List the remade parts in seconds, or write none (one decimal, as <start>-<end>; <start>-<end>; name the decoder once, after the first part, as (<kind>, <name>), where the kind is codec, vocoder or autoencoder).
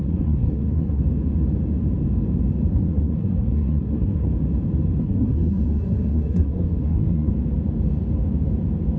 0.0-1.0 (codec, SNAC); 2.7-4.3; 5.0-7.3